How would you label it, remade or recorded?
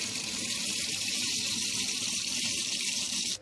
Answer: remade